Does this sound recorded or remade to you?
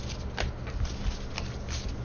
recorded